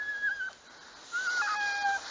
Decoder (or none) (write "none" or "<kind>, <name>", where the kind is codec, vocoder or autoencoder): none